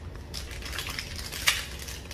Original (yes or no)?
yes